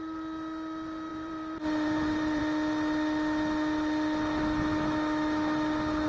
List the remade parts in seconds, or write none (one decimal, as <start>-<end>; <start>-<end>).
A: 1.1-2.4